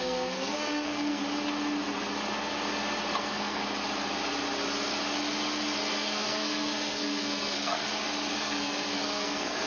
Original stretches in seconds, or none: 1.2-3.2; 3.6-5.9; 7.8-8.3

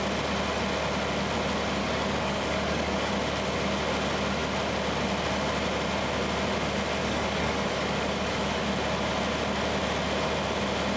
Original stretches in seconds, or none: 0.0-1.8; 3.1-7.0; 8.6-11.0

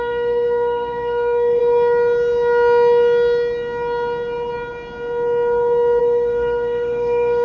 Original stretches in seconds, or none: 1.6-6.0

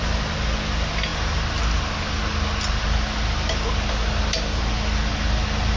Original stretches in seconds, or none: 0.0-5.8

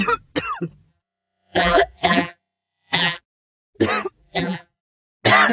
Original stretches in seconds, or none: 0.0-0.9; 3.2-4.2; 4.8-5.5

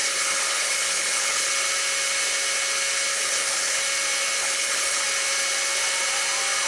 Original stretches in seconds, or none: 1.5-3.1; 3.8-4.4; 5.0-6.7

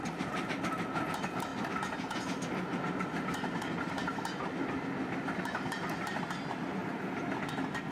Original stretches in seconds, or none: 0.0-7.9